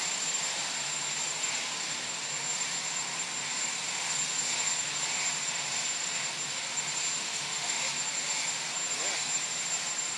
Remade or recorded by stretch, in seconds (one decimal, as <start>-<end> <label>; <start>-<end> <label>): 0.0-7.2 recorded; 7.2-7.8 remade; 7.8-10.2 recorded